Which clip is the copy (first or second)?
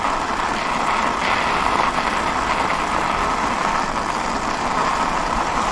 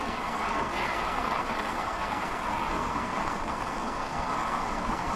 second